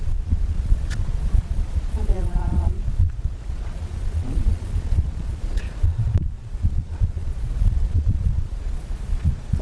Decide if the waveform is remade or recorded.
remade